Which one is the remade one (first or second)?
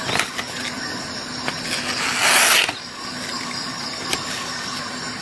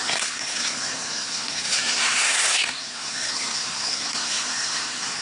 second